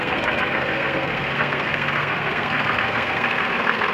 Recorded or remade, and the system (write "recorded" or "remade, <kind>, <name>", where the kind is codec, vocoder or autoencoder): remade, codec, SNAC